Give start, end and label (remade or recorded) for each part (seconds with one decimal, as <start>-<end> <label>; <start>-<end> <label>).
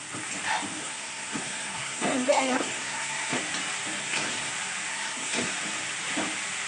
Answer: 0.0-0.8 recorded; 0.8-3.4 remade; 3.4-4.0 recorded; 4.0-4.5 remade; 4.5-4.9 recorded; 4.9-5.5 remade; 5.5-6.7 recorded